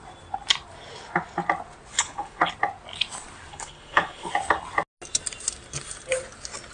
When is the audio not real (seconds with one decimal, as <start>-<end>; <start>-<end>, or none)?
1.9-2.5; 3.5-4.3